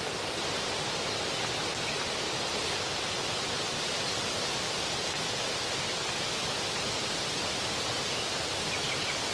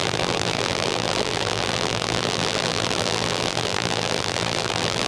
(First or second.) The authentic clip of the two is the first